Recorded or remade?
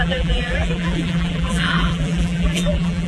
remade